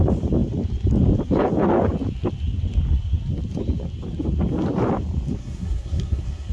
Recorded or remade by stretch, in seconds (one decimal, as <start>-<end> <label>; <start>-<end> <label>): 0.0-5.4 recorded; 5.4-6.5 remade